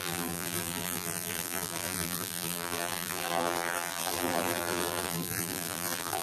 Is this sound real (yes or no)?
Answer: no